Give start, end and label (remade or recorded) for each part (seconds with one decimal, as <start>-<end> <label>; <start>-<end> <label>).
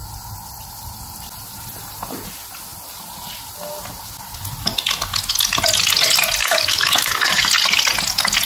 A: 0.0-6.4 recorded; 6.4-7.5 remade; 7.5-8.5 recorded